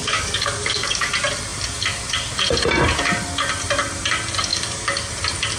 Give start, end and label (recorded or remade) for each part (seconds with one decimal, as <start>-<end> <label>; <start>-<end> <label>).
0.0-1.1 remade; 1.1-4.5 recorded; 4.5-5.1 remade; 5.1-5.6 recorded